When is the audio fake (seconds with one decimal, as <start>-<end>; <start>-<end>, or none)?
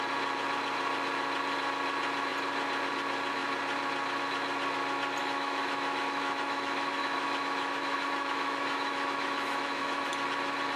5.2-10.1